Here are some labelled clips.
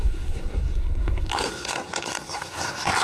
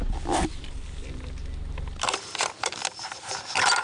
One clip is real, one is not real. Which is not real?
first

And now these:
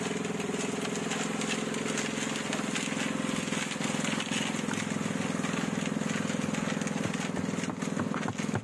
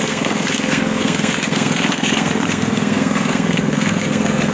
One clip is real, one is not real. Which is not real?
second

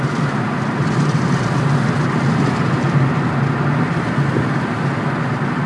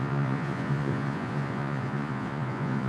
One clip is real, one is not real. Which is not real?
second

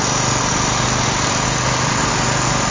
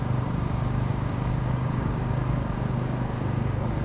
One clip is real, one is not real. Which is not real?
second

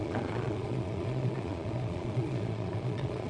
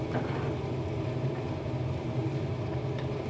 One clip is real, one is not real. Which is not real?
first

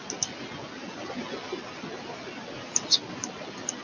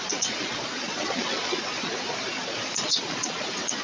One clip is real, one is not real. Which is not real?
second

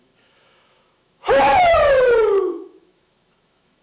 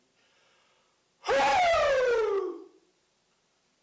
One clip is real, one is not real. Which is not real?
first